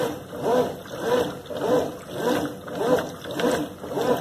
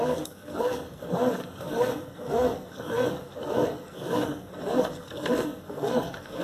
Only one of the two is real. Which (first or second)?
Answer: first